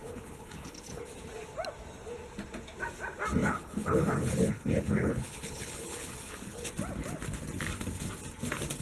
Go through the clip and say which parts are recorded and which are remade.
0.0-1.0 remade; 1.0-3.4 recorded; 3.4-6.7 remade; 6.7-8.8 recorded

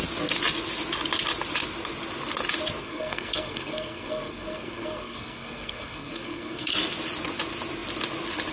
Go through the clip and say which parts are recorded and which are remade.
0.0-2.8 recorded; 2.8-6.7 remade; 6.7-8.5 recorded

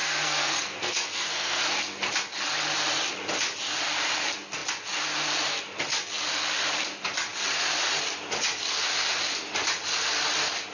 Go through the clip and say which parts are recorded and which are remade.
0.0-1.6 remade; 1.6-10.7 recorded

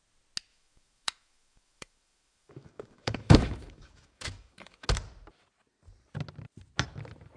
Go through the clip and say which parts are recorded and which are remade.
0.0-0.5 recorded; 0.5-4.9 remade; 4.9-7.4 recorded

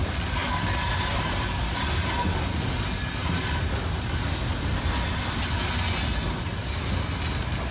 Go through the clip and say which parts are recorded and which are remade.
0.0-7.7 recorded